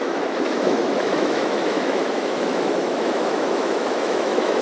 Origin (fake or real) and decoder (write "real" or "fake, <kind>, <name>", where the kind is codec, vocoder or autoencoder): fake, autoencoder, DAC-VAE